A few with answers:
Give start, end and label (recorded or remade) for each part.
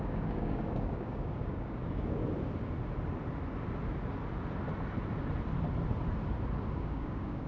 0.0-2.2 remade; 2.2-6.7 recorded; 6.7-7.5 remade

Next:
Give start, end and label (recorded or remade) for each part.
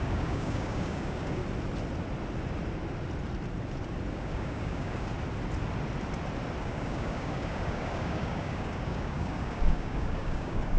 0.0-1.4 remade; 1.4-4.1 recorded; 4.1-5.1 remade; 5.1-6.6 recorded; 6.6-10.8 remade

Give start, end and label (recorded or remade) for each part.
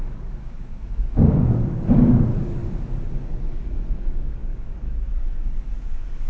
0.0-2.6 remade; 2.6-3.3 recorded; 3.3-6.3 remade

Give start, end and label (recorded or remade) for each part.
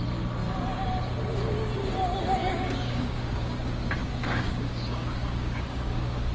0.0-2.4 recorded; 2.4-3.6 remade; 3.6-4.0 recorded; 4.0-6.3 remade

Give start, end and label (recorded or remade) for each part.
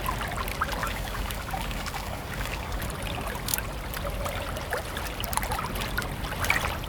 0.0-0.8 recorded; 0.8-2.8 remade; 2.8-6.9 recorded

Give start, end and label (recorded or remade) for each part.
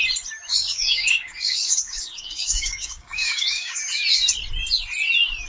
0.0-0.5 recorded; 0.5-3.8 remade; 3.8-5.5 recorded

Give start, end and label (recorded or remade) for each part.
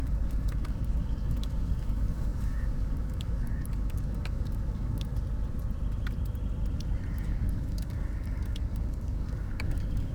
0.0-5.1 remade; 5.1-7.1 recorded; 7.1-10.1 remade